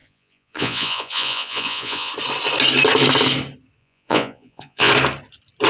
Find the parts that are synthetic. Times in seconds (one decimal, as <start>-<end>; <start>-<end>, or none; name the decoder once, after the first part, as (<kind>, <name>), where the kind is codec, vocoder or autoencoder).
0.0-2.1 (vocoder, Vocos); 3.8-4.9